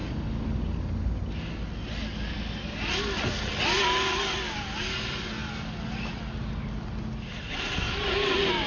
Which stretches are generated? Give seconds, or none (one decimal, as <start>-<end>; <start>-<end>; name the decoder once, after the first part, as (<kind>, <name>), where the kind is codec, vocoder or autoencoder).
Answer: none